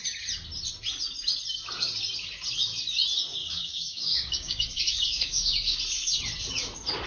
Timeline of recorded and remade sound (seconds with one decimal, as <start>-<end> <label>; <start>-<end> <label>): 0.0-3.4 recorded; 3.4-5.8 remade; 5.8-7.1 recorded